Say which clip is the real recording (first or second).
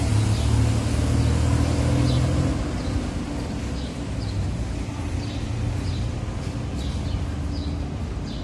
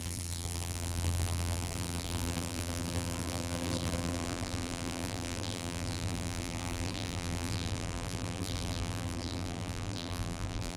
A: first